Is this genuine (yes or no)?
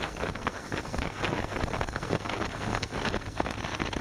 no